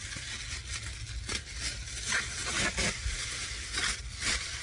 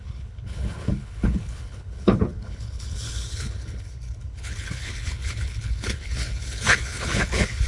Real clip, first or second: first